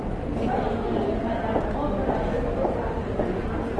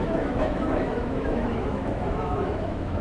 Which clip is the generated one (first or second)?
second